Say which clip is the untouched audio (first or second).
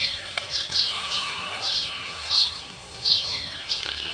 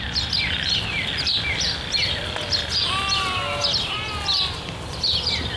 second